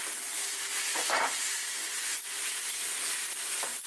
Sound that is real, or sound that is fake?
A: real